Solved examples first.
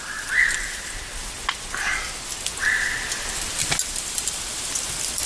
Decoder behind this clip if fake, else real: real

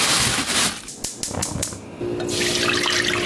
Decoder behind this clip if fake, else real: real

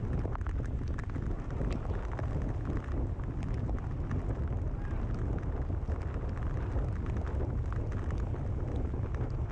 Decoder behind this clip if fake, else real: real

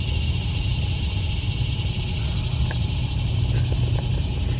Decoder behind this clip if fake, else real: real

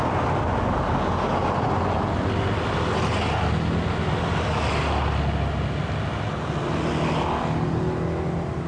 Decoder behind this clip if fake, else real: real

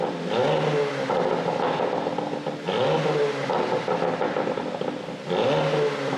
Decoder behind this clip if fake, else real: real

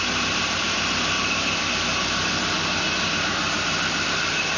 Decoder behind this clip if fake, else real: real